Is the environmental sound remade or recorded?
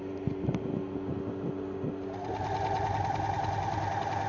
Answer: recorded